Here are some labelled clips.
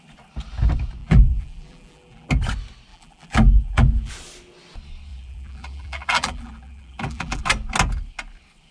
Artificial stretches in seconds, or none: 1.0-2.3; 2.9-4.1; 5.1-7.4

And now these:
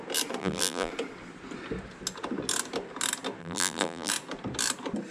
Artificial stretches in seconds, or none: 0.4-0.9; 3.4-4.1

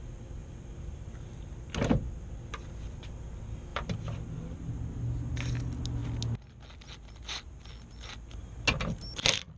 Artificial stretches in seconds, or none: 0.4-1.7; 3.7-4.7

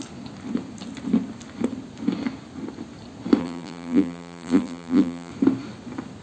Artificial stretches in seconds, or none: 3.4-5.3

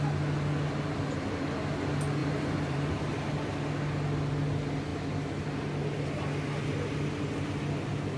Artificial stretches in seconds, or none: 2.2-2.9

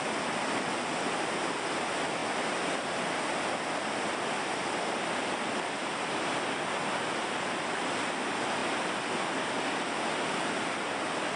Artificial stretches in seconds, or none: none

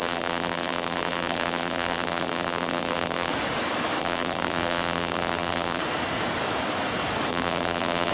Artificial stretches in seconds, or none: 0.0-3.3; 4.0-5.8; 7.3-8.1